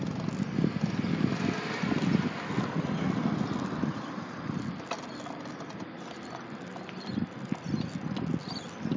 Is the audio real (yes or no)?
yes